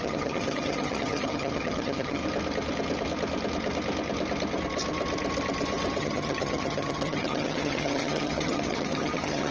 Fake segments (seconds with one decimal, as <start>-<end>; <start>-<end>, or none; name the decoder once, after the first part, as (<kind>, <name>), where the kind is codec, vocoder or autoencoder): 0.0-2.2 (vocoder, HiFi-GAN); 6.0-9.5